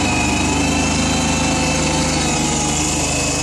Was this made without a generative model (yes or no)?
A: yes